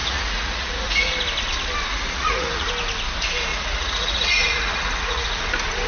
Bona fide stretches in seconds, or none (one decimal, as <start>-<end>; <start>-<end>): 1.1-1.9; 2.7-3.5; 5.4-5.9